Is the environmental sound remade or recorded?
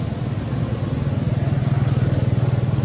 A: recorded